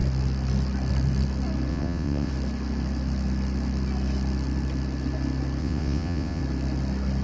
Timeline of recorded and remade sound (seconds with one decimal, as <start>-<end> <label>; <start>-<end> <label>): 0.0-1.7 recorded; 1.7-2.3 remade; 2.3-5.6 recorded; 5.6-6.4 remade; 6.4-7.2 recorded